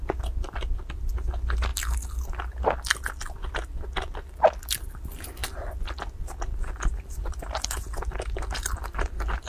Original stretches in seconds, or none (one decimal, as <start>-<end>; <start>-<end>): 0.0-9.5